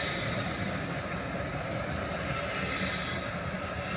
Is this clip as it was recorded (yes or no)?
yes